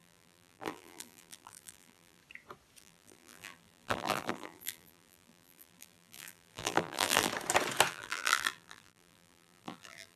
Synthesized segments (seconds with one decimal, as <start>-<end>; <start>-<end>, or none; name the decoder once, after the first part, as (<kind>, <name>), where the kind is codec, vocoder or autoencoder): 0.0-2.2 (vocoder, BigVGAN v2); 2.8-7.3; 7.9-10.2